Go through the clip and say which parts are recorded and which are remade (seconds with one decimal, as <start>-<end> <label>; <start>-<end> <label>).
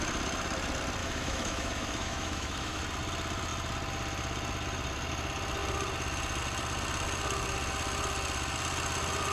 0.0-1.0 recorded; 1.0-2.8 remade; 2.8-9.3 recorded